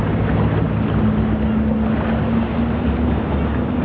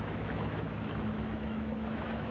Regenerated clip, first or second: second